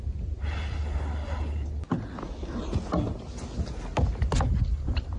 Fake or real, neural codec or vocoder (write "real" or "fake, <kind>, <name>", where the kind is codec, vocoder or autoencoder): real